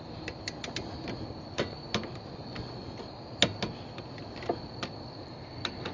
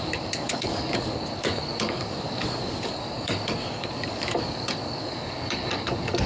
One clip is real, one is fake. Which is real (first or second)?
first